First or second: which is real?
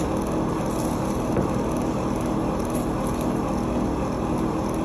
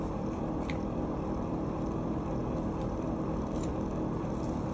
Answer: first